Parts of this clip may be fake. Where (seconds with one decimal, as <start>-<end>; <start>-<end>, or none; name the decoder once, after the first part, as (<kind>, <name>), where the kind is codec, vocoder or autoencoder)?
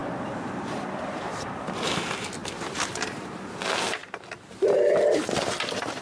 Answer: 0.0-1.6 (vocoder, BigVGAN v2); 2.4-3.6; 4.0-4.9